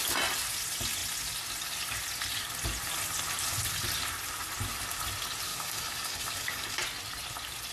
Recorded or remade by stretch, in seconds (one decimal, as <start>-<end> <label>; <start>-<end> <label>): 0.0-5.5 recorded; 5.5-6.8 remade; 6.8-7.7 recorded